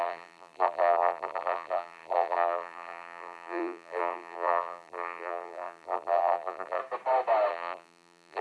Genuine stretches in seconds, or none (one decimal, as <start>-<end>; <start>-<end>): 6.8-7.5